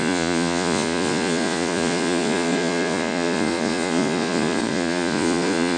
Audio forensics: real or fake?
fake